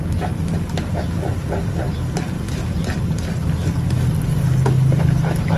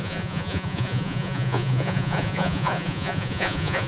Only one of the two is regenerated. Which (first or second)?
second